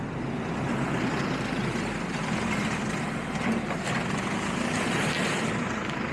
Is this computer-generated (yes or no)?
no